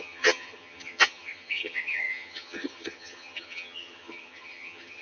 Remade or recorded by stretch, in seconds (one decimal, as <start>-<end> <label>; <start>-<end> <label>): 0.0-5.0 remade